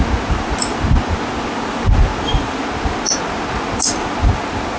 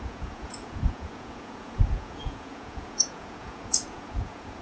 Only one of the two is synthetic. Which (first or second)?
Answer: second